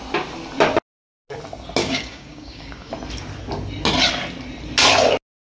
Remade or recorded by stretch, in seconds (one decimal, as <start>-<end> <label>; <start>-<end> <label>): 0.0-1.8 recorded; 1.8-2.9 remade; 2.9-5.5 recorded